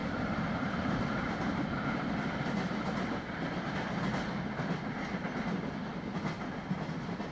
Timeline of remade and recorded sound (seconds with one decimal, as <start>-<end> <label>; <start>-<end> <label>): 0.0-1.7 remade; 1.7-7.3 recorded